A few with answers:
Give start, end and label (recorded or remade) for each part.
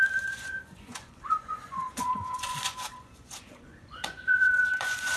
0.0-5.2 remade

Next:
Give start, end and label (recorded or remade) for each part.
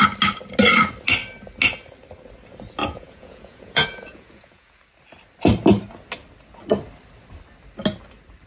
0.0-2.8 recorded; 2.8-4.8 remade; 4.8-8.5 recorded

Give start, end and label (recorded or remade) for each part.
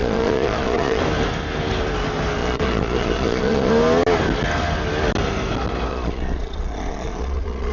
0.0-1.0 remade; 1.0-2.4 recorded; 2.4-3.7 remade; 3.7-5.9 recorded; 5.9-7.7 remade